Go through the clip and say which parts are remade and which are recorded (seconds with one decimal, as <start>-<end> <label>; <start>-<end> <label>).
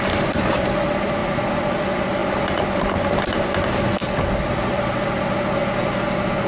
0.0-6.5 recorded